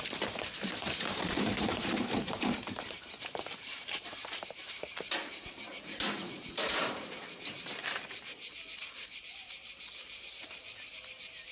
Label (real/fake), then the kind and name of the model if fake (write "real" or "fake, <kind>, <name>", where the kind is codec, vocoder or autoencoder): fake, vocoder, BigVGAN v2